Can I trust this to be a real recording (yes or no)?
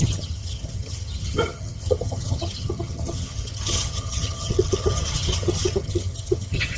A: no